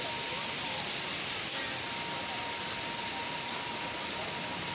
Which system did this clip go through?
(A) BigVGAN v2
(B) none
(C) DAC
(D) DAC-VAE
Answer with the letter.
B